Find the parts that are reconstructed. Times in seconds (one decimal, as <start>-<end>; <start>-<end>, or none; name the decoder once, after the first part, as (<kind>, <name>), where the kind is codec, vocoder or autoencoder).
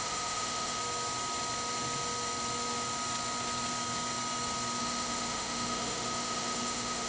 0.0-0.8 (autoencoder, DAC-VAE); 4.8-7.1